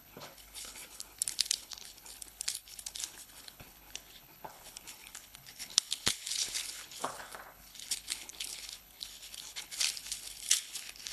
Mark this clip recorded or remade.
remade